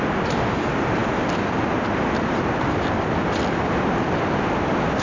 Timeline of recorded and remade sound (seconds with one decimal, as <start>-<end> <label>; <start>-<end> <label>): 0.0-5.0 recorded